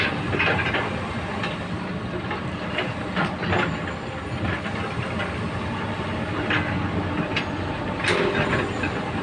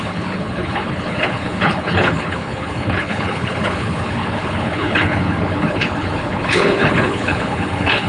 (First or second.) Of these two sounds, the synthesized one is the second